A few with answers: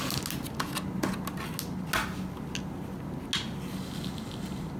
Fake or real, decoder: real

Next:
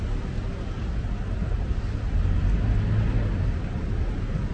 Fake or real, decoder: real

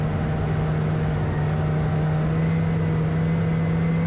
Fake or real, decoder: real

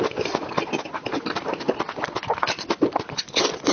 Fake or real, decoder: fake, vocoder, BigVGAN v2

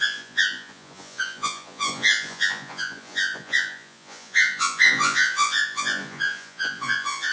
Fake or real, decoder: fake, vocoder, Vocos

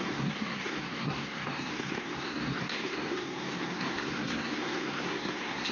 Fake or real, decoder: fake, codec, SNAC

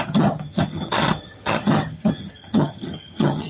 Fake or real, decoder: fake, vocoder, HiFi-GAN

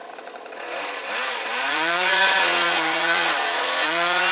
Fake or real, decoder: fake, vocoder, Vocos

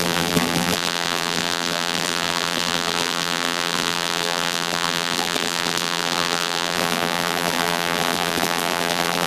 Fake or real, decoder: fake, vocoder, BigVGAN v2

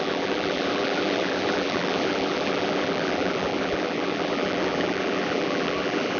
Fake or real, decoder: fake, vocoder, BigVGAN v2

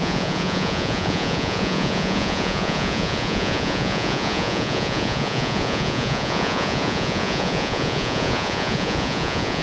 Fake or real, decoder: fake, vocoder, Vocos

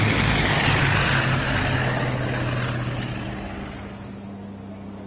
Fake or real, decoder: real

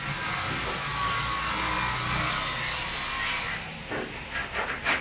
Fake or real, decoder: real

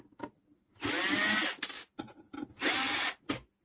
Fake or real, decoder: real